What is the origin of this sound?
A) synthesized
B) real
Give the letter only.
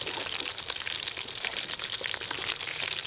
B